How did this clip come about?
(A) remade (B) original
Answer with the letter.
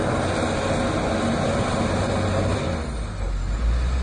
B